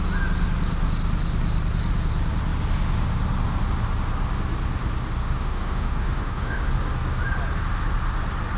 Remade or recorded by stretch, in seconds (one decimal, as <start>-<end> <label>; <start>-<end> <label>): 0.0-5.2 recorded; 5.2-6.7 remade; 6.7-8.6 recorded